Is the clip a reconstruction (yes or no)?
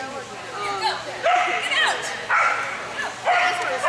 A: no